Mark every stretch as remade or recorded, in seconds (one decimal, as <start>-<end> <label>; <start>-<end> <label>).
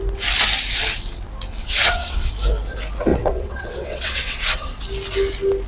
0.0-1.6 recorded; 1.6-2.3 remade; 2.3-3.1 recorded; 3.1-4.8 remade; 4.8-5.7 recorded